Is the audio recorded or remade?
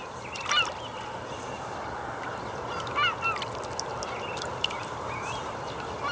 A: recorded